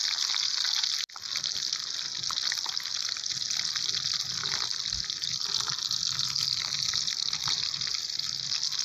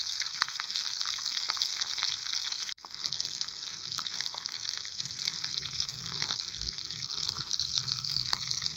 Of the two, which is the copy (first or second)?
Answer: second